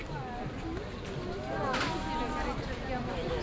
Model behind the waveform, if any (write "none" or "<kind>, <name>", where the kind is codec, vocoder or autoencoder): none